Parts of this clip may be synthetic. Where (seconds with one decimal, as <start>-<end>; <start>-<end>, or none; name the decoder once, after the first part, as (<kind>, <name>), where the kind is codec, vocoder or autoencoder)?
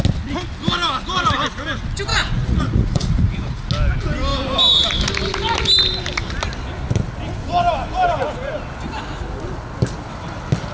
2.1-3.7 (vocoder, Vocos)